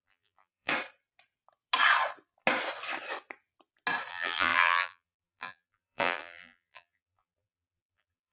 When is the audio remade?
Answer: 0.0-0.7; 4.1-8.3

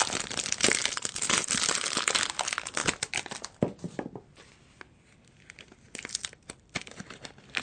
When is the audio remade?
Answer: 0.8-1.8